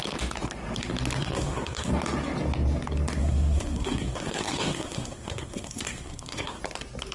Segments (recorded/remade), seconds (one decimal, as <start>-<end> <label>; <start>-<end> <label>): 0.0-1.2 recorded; 1.2-1.9 remade; 1.9-3.2 recorded; 3.2-6.6 remade; 6.6-7.1 recorded